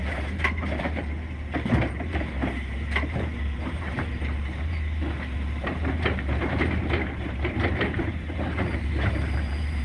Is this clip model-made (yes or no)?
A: yes